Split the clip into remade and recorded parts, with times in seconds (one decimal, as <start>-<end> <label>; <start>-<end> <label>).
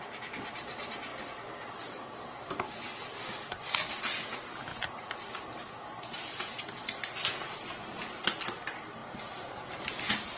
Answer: 0.0-4.7 recorded; 4.7-5.3 remade; 5.3-9.0 recorded; 9.0-9.9 remade; 9.9-10.4 recorded